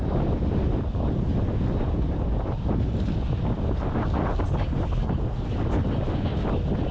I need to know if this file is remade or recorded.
recorded